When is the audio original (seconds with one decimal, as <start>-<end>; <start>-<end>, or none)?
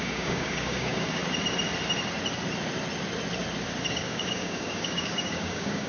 1.2-3.9